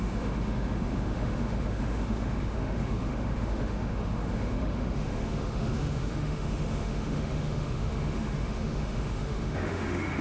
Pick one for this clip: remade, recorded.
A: remade